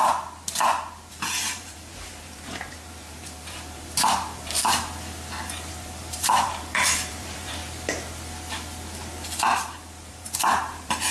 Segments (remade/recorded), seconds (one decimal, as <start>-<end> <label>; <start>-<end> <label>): 0.0-1.1 recorded; 1.1-4.6 remade; 4.6-5.7 recorded; 5.7-7.6 remade; 7.6-10.1 recorded; 10.1-11.1 remade